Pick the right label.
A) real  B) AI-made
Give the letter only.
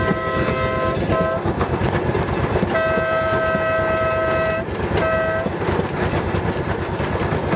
A